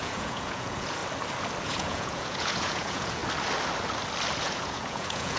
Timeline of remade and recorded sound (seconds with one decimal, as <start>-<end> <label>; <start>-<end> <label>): 0.0-1.0 remade; 1.0-1.6 recorded; 1.6-3.2 remade; 3.2-4.4 recorded; 4.4-5.4 remade